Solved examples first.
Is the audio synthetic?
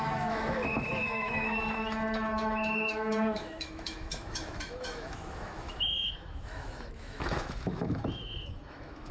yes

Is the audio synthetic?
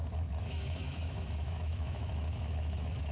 yes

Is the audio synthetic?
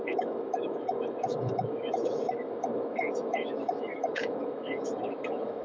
yes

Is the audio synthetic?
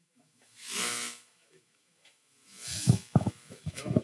yes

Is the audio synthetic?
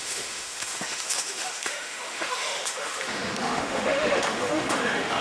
yes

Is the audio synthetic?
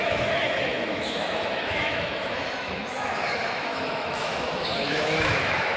yes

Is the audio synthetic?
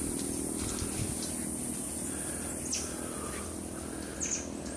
no